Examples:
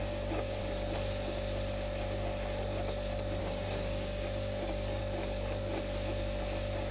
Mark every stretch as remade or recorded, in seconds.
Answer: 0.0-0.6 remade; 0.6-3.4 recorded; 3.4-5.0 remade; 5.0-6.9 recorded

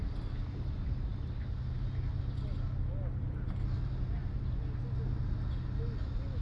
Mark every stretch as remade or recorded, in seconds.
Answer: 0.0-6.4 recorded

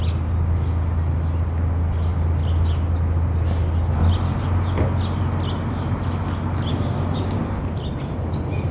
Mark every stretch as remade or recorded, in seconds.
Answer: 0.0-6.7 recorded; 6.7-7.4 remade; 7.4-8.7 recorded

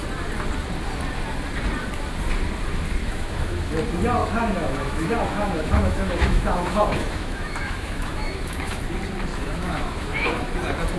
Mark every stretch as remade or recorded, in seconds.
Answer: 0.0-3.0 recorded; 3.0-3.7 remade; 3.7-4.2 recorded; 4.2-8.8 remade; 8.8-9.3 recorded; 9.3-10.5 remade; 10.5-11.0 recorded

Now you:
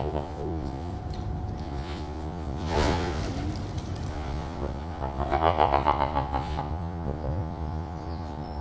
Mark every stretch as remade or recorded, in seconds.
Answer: 0.0-0.9 remade; 0.9-1.6 recorded; 1.6-3.2 remade; 3.2-4.1 recorded; 4.1-8.6 remade

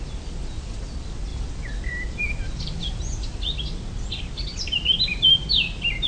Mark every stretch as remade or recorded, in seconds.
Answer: 0.0-6.1 recorded

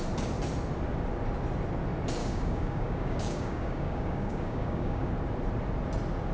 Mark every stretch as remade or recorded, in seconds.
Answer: 0.0-2.2 recorded; 2.2-5.1 remade; 5.1-6.3 recorded